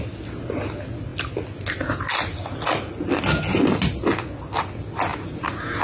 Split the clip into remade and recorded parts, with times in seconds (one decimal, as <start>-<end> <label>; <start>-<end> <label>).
0.0-5.8 recorded

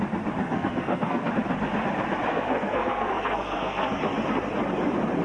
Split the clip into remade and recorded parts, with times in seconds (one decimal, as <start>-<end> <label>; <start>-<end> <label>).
0.0-0.4 recorded; 0.4-1.3 remade; 1.3-2.3 recorded; 2.3-4.0 remade; 4.0-5.2 recorded